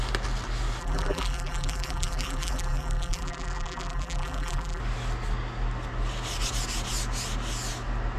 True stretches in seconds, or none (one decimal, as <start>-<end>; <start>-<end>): 0.0-0.8; 4.8-8.2